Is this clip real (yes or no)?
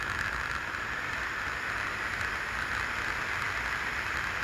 yes